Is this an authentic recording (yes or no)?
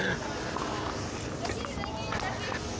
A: yes